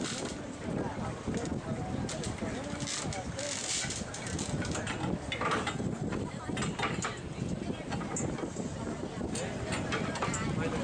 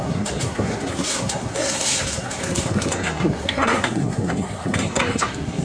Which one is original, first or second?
first